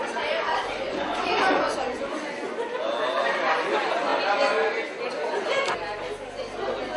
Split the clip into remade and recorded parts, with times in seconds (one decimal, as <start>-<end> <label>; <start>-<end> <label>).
0.0-0.7 recorded; 0.7-2.0 remade; 2.0-7.0 recorded